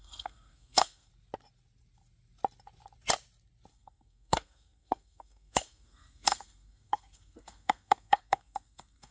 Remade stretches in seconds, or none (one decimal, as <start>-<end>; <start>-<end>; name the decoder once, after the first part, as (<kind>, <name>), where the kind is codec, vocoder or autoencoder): 0.0-1.1 (codec, SNAC); 3.7-9.1